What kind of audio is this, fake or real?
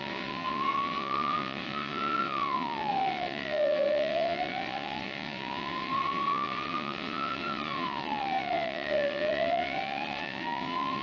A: fake